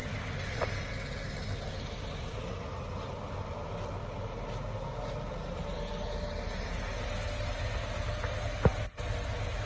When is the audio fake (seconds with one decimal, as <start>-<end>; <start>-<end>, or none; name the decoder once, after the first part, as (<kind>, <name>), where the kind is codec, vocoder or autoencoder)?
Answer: none